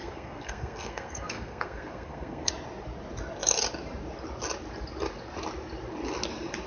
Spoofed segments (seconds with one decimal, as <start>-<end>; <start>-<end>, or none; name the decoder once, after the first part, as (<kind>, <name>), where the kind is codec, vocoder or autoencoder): 0.0-2.5 (codec, SNAC)